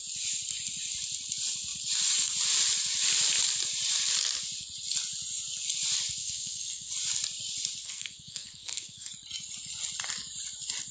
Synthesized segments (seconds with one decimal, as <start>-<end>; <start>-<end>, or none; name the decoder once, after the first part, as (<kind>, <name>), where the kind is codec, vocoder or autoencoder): 6.2-6.9 (codec, SNAC); 7.8-9.1